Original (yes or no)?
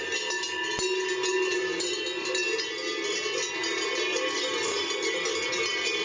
yes